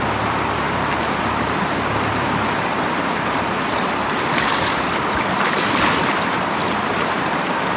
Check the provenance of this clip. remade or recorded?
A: remade